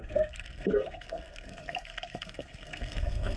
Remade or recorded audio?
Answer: remade